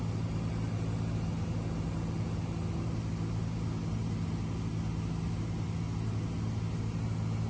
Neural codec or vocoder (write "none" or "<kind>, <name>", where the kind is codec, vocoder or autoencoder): none